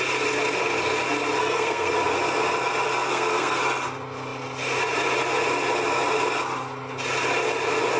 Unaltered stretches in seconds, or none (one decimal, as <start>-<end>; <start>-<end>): 0.0-1.4; 1.9-3.1; 3.6-8.0